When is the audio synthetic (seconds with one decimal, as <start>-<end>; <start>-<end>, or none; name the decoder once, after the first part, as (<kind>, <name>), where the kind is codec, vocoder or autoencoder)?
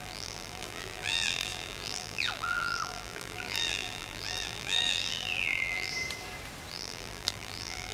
0.0-5.9 (vocoder, BigVGAN v2); 6.7-7.9